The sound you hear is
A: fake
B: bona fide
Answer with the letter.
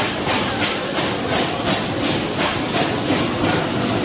B